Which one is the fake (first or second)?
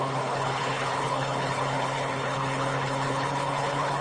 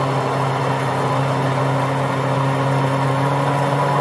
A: first